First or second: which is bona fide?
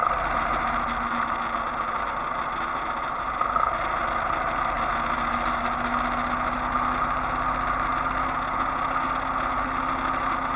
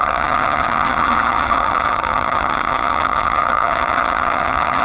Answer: first